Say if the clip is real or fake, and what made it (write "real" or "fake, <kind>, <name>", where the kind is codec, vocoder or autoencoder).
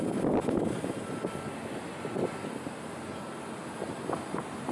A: real